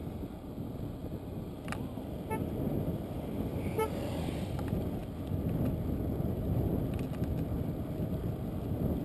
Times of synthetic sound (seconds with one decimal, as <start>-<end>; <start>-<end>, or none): none